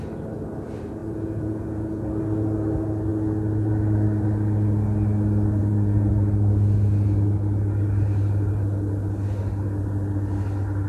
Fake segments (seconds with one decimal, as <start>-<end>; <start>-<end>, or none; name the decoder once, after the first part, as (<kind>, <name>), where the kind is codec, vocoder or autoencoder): 1.0-2.1 (vocoder, Vocos); 5.6-6.1